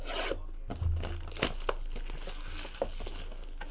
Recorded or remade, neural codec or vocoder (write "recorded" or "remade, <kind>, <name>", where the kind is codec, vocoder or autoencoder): recorded